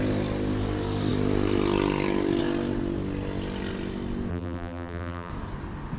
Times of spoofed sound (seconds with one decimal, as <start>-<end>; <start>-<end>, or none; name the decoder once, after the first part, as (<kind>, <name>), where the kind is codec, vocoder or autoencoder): 4.3-5.3 (vocoder, BigVGAN v2)

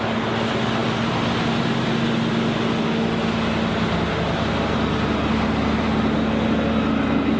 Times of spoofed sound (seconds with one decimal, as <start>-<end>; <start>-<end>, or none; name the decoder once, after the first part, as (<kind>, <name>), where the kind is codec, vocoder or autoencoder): none

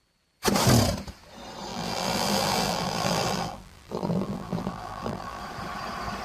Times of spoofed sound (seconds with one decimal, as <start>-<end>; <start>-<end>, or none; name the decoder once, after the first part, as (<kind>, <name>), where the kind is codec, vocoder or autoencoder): 1.7-5.4 (vocoder, BigVGAN v2)

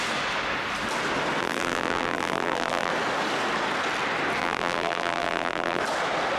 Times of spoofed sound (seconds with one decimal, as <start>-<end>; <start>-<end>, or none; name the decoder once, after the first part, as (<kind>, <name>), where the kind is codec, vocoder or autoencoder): 1.4-2.9 (vocoder, BigVGAN v2); 4.4-5.8